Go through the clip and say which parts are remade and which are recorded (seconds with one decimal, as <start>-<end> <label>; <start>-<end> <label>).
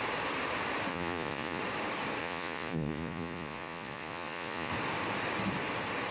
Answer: 0.0-0.9 recorded; 0.9-1.6 remade; 1.6-2.2 recorded; 2.2-4.7 remade; 4.7-6.1 recorded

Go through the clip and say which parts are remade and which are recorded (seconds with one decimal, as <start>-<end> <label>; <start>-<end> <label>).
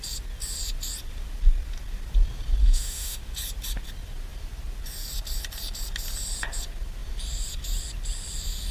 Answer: 0.0-2.6 recorded; 2.6-3.2 remade; 3.2-8.7 recorded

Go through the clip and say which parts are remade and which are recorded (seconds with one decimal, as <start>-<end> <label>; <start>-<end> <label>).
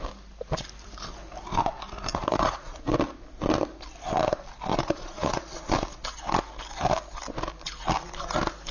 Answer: 0.0-2.1 recorded; 2.1-2.9 remade; 2.9-4.7 recorded; 4.7-5.4 remade; 5.4-8.7 recorded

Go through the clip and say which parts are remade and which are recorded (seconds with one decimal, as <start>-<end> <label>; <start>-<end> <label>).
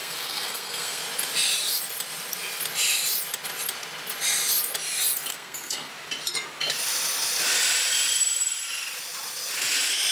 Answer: 0.0-1.0 remade; 1.0-5.3 recorded; 5.3-5.9 remade; 5.9-10.1 recorded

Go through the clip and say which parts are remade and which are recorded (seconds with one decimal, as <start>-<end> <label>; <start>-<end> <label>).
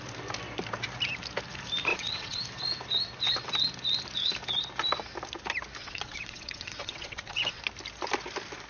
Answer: 0.0-1.9 recorded; 1.9-2.4 remade; 2.4-5.8 recorded; 5.8-7.6 remade; 7.6-8.7 recorded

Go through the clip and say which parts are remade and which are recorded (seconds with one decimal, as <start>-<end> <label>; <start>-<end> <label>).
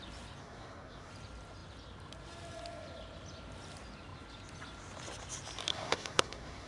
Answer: 0.0-0.4 recorded; 0.4-1.1 remade; 1.1-5.7 recorded; 5.7-6.7 remade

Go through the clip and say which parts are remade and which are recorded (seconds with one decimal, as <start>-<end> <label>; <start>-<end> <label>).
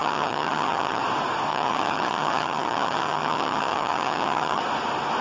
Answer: 0.0-1.0 remade; 1.0-1.5 recorded; 1.5-4.6 remade; 4.6-5.2 recorded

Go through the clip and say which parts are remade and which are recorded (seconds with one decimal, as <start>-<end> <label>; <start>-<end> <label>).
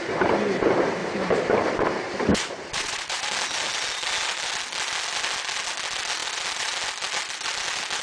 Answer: 0.0-1.0 recorded; 1.0-3.3 remade; 3.3-8.0 recorded